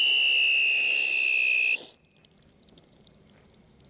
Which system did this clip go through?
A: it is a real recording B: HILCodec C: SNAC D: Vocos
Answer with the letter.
A